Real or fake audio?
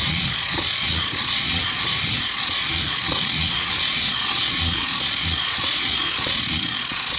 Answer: fake